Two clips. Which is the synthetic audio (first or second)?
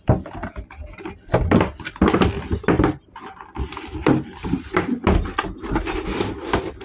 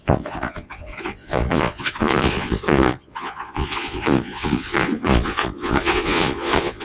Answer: second